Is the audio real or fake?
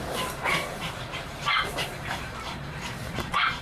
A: fake